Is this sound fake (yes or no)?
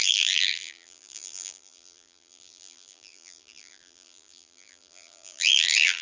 yes